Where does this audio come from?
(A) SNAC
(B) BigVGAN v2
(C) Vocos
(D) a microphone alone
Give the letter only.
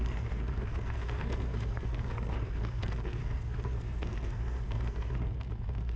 A